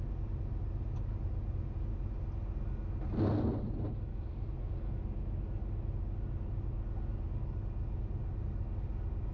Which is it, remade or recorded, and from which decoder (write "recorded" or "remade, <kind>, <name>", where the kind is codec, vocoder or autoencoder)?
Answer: recorded